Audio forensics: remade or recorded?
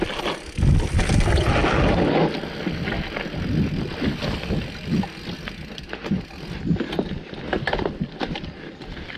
recorded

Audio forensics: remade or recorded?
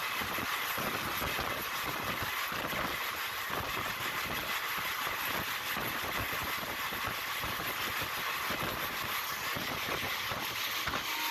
recorded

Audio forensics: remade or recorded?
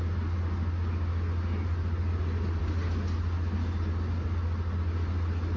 recorded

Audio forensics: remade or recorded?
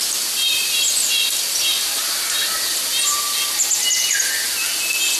recorded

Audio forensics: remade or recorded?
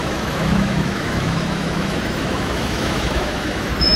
remade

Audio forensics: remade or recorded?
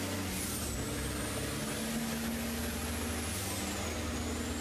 recorded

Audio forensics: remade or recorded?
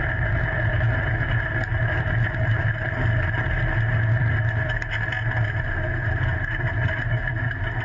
recorded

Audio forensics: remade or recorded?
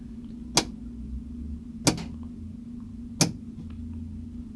recorded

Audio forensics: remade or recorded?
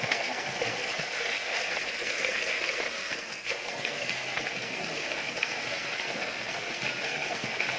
remade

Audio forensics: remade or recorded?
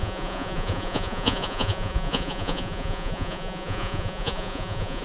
remade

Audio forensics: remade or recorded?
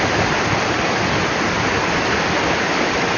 recorded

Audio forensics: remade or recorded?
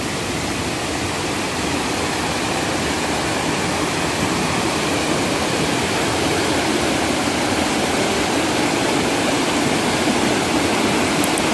recorded